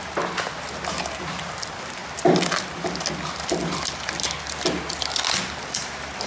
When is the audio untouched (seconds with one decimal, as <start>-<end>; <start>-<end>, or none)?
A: 0.0-6.3

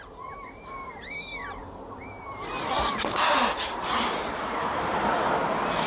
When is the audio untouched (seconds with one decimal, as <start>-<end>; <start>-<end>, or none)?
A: 0.0-1.6; 5.1-5.9

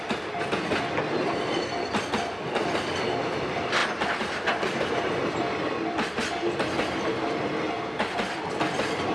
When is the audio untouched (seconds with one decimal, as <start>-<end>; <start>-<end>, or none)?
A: 0.0-9.1

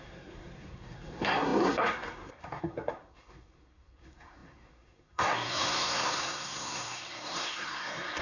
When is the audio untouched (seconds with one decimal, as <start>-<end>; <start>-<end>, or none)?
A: none

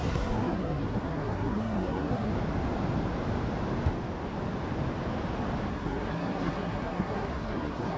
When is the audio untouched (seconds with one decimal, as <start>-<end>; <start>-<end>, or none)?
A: 2.3-5.7

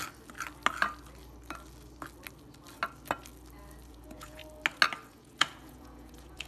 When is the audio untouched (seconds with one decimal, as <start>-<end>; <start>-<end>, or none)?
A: 0.0-3.9; 4.4-5.1